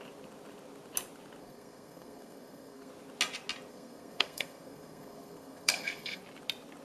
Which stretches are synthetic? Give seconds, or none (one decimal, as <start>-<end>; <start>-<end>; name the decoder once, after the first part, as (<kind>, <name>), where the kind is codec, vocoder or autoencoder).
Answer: 1.4-2.9 (codec, SNAC); 3.7-6.2